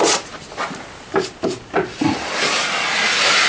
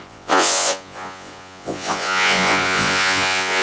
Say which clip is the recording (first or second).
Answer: first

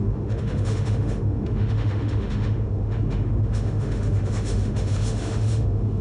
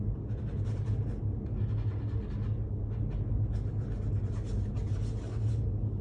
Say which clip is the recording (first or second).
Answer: second